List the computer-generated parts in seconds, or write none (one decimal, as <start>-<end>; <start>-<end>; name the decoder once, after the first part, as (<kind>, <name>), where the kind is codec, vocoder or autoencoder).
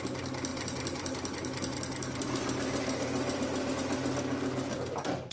none